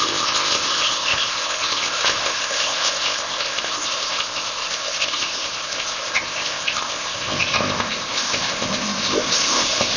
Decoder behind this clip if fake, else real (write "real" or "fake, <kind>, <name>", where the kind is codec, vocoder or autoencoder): fake, codec, ZipCodec